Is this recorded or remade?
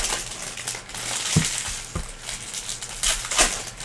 recorded